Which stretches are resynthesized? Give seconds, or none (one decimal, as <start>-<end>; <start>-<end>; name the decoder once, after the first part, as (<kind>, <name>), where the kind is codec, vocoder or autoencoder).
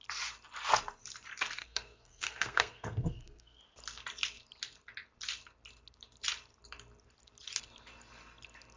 1.6-3.6 (codec, SNAC)